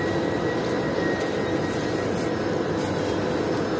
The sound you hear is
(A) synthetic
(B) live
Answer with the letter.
B